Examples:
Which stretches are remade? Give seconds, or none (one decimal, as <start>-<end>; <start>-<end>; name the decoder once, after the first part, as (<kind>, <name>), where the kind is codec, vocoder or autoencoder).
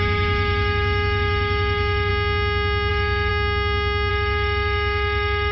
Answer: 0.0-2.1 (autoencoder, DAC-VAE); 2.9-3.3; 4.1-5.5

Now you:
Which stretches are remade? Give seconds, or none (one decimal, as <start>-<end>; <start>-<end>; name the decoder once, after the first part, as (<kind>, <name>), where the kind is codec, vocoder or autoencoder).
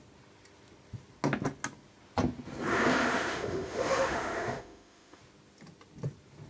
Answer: 2.7-5.2 (autoencoder, DAC-VAE)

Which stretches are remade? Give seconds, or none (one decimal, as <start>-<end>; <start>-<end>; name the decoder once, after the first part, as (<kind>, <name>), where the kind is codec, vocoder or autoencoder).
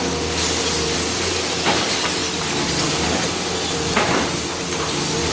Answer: none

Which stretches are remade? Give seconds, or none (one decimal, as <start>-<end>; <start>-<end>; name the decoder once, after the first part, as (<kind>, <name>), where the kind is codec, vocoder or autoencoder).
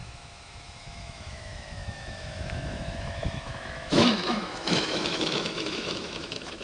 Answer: 0.0-6.6 (autoencoder, DAC-VAE)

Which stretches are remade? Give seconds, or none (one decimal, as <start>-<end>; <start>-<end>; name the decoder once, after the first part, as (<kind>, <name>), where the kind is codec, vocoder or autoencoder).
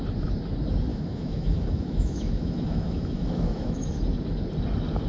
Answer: 0.9-4.0 (autoencoder, DAC-VAE)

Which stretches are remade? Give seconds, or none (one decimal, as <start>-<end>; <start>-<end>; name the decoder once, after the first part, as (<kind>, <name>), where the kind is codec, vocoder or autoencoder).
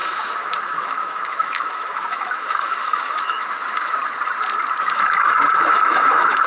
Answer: 0.0-4.0 (autoencoder, DAC-VAE); 4.8-6.5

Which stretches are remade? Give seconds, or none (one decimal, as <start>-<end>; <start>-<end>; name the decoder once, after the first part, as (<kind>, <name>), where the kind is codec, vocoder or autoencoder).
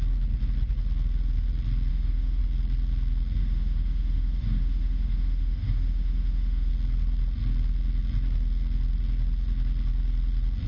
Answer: 1.9-2.4 (autoencoder, DAC-VAE); 3.4-6.7